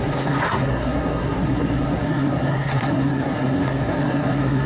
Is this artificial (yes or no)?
yes